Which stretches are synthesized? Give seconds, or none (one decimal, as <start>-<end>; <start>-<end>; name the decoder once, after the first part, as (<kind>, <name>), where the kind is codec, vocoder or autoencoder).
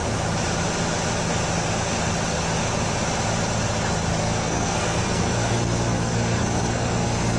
4.2-7.4 (codec, SNAC)